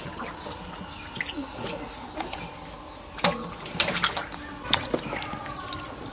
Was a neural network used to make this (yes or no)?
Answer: no